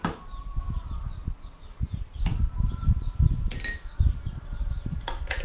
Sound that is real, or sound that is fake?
real